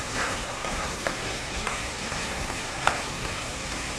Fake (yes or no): yes